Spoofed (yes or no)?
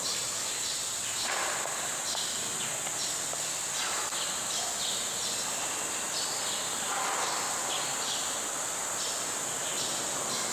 no